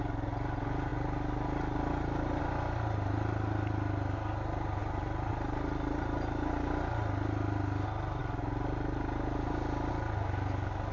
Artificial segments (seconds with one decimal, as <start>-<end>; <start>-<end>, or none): none